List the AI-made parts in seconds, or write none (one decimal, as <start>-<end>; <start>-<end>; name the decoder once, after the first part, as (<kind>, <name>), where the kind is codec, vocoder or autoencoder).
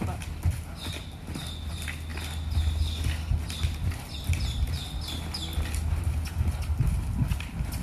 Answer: none